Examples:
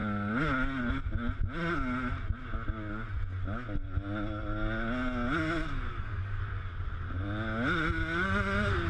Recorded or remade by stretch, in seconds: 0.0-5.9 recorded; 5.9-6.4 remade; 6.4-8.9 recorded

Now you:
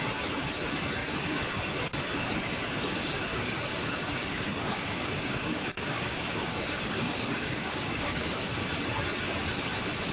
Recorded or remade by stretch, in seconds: 0.0-1.0 recorded; 1.0-1.5 remade; 1.5-3.3 recorded; 3.3-8.5 remade; 8.5-10.1 recorded